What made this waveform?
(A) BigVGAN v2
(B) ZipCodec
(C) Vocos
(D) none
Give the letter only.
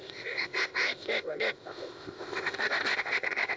B